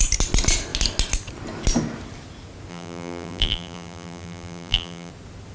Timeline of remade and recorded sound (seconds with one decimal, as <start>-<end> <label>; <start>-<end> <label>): 0.0-2.7 recorded; 2.7-5.1 remade; 5.1-5.5 recorded